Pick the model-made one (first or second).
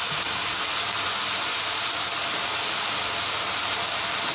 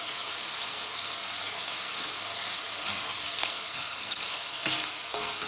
second